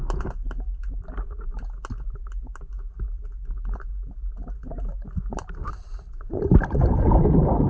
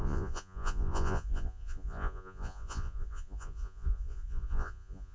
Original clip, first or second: first